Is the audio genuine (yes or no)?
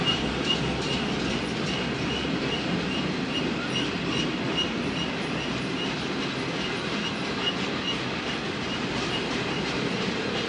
yes